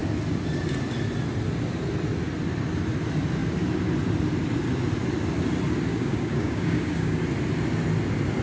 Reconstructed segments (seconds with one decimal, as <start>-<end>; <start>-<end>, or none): 5.9-7.2